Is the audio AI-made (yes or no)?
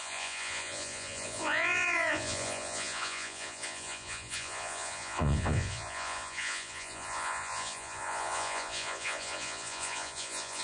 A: yes